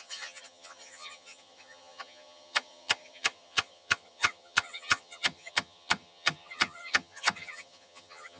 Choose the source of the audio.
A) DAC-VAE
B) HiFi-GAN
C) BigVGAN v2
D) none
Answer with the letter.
B